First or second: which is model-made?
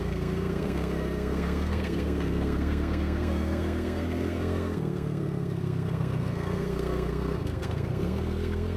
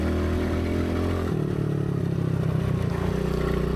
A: first